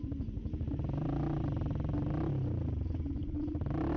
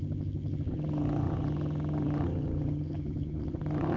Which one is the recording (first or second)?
first